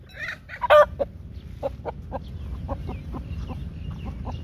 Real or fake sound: real